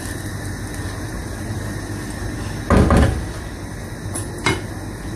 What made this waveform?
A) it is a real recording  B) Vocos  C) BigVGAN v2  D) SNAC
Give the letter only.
A